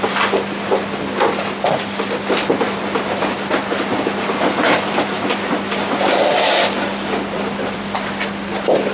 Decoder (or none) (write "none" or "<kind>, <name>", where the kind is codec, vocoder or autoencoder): none